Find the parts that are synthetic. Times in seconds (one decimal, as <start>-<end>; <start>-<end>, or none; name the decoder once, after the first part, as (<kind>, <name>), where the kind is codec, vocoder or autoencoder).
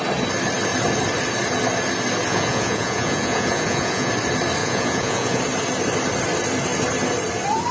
2.3-4.1 (vocoder, Vocos); 4.6-5.4